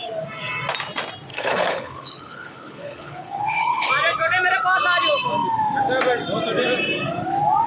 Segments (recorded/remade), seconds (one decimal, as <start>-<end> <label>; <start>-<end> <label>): 0.0-1.3 recorded; 1.3-3.9 remade; 3.9-7.7 recorded